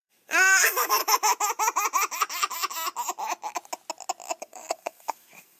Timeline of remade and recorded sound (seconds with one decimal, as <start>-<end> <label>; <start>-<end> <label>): 0.0-1.0 remade; 1.0-4.4 recorded; 4.4-5.6 remade